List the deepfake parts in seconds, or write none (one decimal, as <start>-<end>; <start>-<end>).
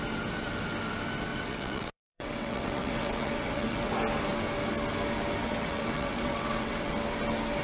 1.3-3.9; 5.4-6.9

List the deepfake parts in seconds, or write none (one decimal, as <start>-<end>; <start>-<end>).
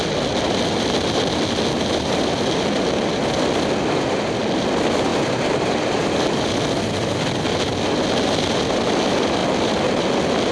none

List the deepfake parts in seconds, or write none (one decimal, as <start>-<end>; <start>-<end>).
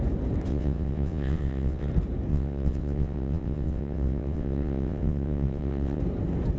0.5-1.9; 2.3-6.0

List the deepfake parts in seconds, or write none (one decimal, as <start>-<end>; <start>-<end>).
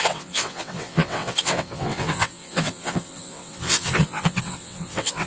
0.0-5.3